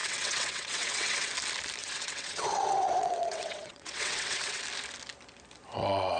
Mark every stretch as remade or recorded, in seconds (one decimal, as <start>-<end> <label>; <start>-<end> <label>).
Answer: 0.0-1.3 remade; 1.3-1.8 recorded; 1.8-4.6 remade; 4.6-6.2 recorded